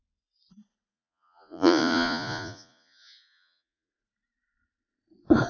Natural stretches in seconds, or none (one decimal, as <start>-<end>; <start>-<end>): 0.0-0.9; 3.9-5.5